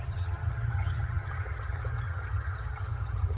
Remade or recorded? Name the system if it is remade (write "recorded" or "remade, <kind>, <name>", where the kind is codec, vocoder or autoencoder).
remade, vocoder, HiFi-GAN